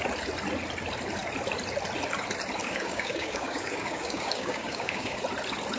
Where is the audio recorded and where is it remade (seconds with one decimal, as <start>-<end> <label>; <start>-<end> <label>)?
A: 0.0-2.6 recorded; 2.6-5.2 remade; 5.2-5.8 recorded

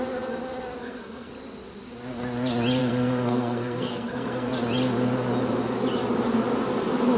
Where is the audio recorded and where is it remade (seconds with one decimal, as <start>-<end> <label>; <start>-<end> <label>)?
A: 0.0-0.8 recorded; 0.8-1.3 remade; 1.3-2.8 recorded; 2.8-4.5 remade; 4.5-7.2 recorded